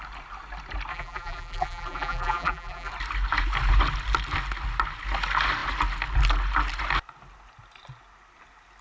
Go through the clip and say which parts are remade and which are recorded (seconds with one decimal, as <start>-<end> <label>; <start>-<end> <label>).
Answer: 0.0-0.9 recorded; 0.9-2.9 remade; 2.9-8.8 recorded